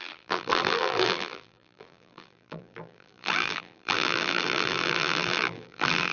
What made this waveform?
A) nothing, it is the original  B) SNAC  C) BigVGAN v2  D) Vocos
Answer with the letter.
C